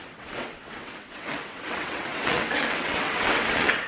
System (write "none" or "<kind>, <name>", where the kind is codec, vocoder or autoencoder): vocoder, WaveNeXt